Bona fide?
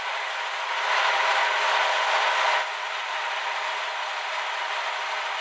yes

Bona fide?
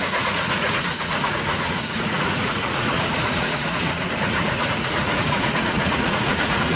no